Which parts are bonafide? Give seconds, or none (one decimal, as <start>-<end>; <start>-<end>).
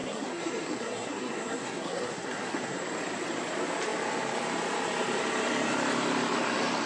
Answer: 2.8-6.9